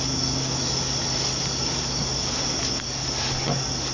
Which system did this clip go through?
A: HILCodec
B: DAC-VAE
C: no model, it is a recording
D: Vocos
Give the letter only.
C